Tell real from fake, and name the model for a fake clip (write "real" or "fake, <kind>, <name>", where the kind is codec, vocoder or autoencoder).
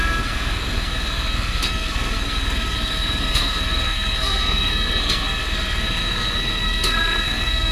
fake, codec, SNAC